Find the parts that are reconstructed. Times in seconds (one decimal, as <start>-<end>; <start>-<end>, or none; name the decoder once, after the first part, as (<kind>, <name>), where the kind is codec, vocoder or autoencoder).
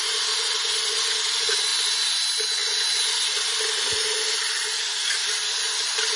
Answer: none